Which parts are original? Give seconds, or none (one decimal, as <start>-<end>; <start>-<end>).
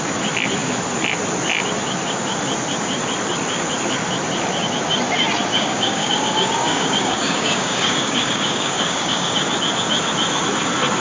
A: 0.0-5.5; 9.4-11.0